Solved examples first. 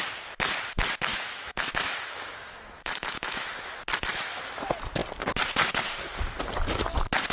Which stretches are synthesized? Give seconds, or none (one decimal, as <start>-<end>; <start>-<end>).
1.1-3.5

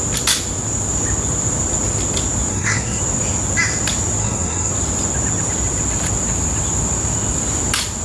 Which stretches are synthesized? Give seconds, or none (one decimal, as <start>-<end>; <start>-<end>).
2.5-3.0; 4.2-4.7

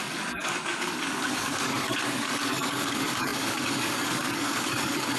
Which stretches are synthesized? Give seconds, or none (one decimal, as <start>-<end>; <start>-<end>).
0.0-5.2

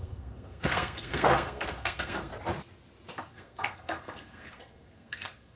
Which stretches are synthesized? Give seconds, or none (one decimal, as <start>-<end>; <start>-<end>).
0.0-2.3; 3.2-5.6